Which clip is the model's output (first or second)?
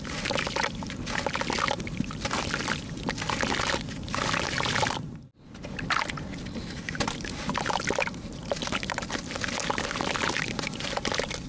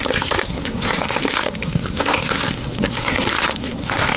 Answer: second